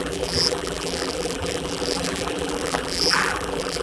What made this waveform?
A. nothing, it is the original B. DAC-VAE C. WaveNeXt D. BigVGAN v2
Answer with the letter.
D